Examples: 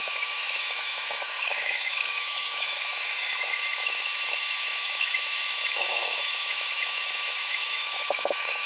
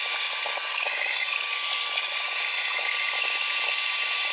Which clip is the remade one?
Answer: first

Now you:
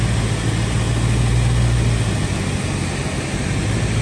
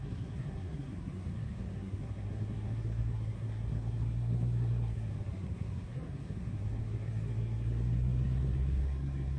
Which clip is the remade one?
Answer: second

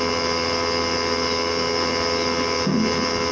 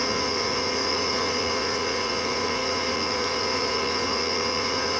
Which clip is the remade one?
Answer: second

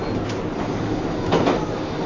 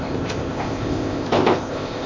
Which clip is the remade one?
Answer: second